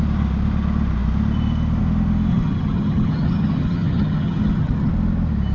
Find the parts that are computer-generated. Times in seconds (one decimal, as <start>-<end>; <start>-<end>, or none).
2.3-4.9